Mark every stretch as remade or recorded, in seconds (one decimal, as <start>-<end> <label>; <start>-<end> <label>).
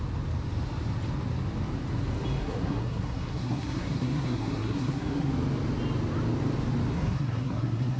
0.0-2.4 recorded; 2.4-5.3 remade; 5.3-6.9 recorded; 6.9-8.0 remade